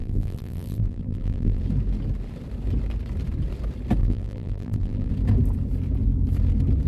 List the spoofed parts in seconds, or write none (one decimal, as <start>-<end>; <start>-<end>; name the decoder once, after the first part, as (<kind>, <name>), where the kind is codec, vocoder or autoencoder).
0.0-1.6 (vocoder, BigVGAN v2); 4.0-5.1